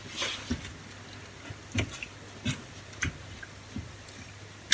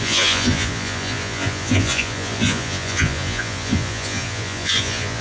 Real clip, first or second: first